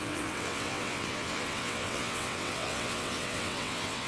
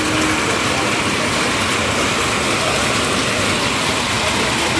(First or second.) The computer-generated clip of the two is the first